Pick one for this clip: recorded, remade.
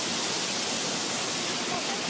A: recorded